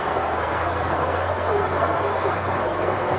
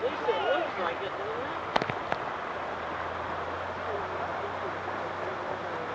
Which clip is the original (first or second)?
second